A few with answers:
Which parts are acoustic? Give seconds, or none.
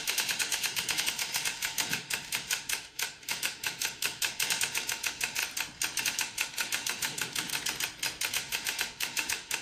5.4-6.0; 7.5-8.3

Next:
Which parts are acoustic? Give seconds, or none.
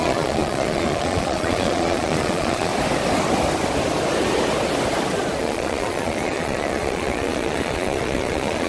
2.7-5.4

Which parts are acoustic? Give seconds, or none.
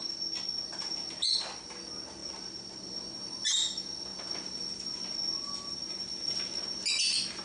0.0-7.4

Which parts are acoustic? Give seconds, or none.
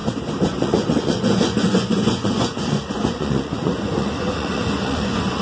0.0-0.6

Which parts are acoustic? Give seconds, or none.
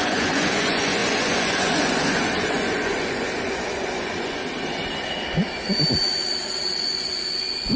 4.4-6.8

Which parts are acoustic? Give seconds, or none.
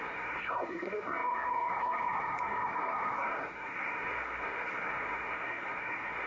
none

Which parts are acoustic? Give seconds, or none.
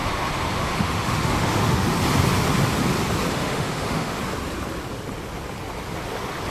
1.9-3.3; 4.2-6.5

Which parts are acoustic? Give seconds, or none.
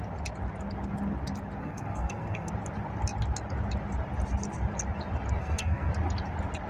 0.0-1.6; 2.5-5.4; 5.9-6.7